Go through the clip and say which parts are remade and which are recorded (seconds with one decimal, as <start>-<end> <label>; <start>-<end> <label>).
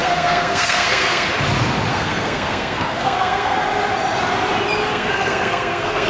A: 0.0-1.3 remade; 1.3-1.9 recorded; 1.9-3.6 remade; 3.6-4.9 recorded; 4.9-6.1 remade